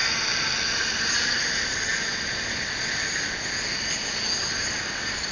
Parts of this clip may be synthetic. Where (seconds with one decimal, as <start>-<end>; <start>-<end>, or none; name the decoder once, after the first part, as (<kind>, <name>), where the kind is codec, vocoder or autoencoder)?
none